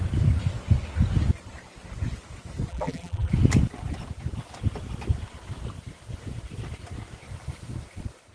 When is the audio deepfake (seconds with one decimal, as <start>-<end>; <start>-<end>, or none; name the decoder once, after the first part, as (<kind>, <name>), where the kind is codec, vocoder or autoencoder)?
2.7-3.3 (vocoder, BigVGAN v2)